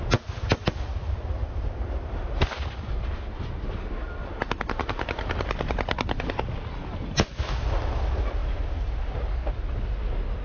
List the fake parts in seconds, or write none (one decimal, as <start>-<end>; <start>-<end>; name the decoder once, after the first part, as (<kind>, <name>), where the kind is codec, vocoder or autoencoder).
1.4-3.1 (vocoder, BigVGAN v2)